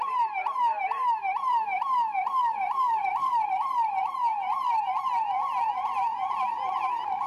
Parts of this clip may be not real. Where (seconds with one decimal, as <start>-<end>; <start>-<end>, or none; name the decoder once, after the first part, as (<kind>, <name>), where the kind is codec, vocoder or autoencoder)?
0.0-1.7 (vocoder, BigVGAN v2); 2.7-4.3; 5.7-7.3